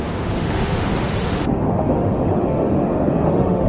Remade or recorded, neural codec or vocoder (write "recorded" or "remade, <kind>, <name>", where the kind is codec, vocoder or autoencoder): remade, autoencoder, DAC-VAE